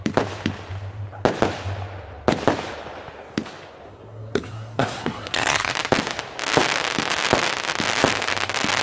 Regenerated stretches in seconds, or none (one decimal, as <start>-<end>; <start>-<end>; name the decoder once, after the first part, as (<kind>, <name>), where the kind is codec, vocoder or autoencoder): 3.9-5.7 (codec, SNAC)